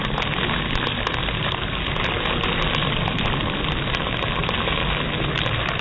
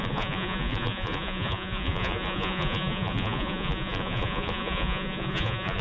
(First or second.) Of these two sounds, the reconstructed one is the second